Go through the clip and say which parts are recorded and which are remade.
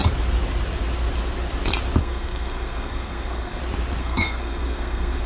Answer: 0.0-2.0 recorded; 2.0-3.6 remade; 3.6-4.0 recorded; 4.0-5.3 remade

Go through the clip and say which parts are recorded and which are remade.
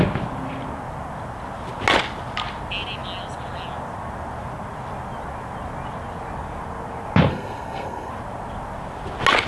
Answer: 0.0-7.3 recorded; 7.3-8.1 remade; 8.1-9.5 recorded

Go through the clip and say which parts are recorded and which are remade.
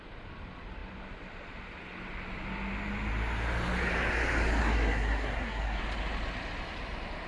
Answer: 0.0-4.6 recorded; 4.6-5.8 remade; 5.8-7.3 recorded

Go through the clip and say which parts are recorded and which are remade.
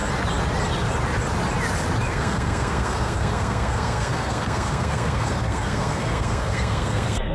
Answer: 0.0-2.1 recorded; 2.1-7.3 remade